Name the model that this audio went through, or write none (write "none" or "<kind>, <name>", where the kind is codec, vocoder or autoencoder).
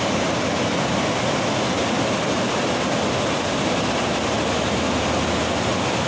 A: none